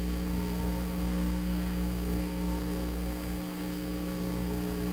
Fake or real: fake